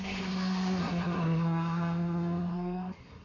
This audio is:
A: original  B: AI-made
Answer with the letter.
B